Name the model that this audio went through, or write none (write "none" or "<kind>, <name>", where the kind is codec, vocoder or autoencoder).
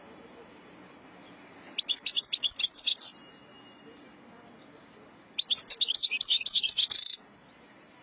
none